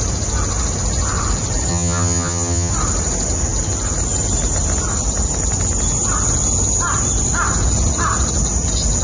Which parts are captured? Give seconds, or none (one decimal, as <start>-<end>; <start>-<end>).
0.0-1.7; 2.7-9.0

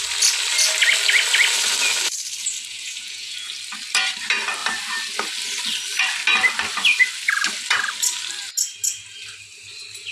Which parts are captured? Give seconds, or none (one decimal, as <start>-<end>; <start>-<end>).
0.0-2.7; 3.5-10.1